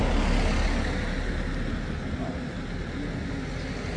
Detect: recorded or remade recorded